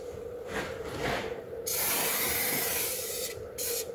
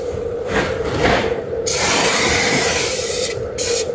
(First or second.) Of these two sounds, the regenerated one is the second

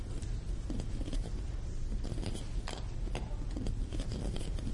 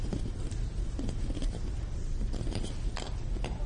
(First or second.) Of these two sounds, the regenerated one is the second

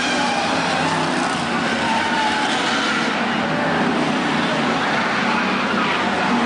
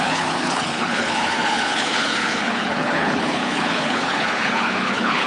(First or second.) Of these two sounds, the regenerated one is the second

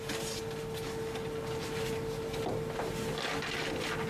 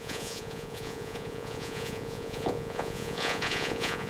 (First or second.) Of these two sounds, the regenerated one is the second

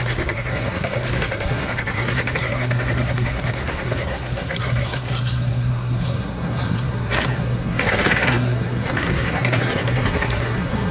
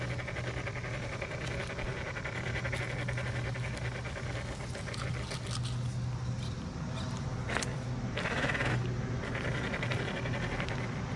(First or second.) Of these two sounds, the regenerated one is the first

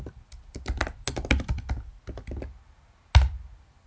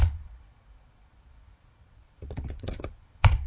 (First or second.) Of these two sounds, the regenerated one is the second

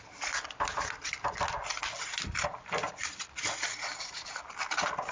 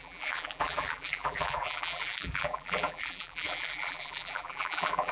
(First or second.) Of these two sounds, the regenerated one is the second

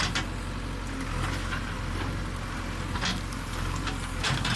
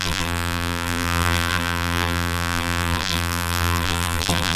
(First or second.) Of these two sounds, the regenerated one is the second